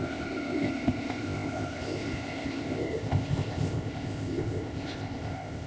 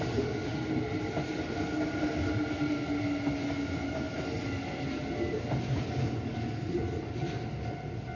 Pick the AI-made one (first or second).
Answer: first